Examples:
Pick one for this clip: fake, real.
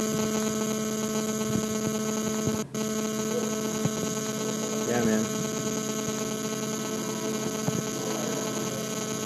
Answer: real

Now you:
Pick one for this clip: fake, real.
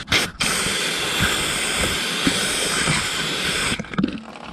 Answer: real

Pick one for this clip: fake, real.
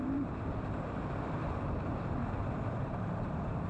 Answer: fake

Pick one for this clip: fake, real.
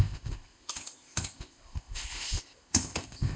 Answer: fake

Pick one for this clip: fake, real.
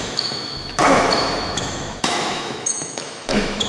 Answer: fake